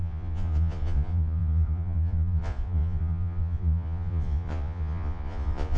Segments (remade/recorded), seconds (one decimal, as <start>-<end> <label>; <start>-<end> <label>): 0.0-5.8 remade